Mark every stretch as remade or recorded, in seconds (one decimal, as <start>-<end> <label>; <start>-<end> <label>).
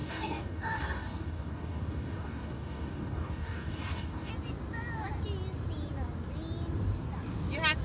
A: 0.0-4.3 remade; 4.3-7.8 recorded